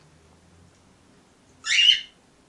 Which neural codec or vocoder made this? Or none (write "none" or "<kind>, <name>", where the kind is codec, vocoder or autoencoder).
none